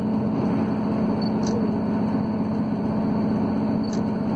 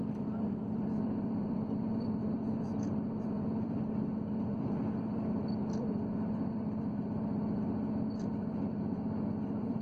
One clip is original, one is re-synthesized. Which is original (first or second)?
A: first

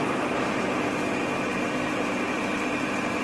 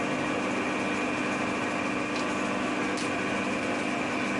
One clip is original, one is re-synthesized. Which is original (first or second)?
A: second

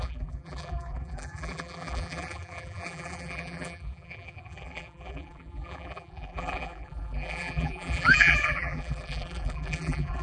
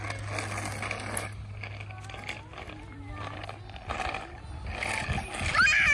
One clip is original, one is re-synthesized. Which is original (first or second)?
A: second